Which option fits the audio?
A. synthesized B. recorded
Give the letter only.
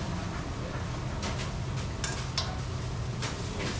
B